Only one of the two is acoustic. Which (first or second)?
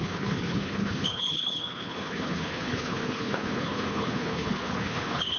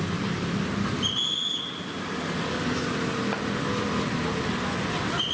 second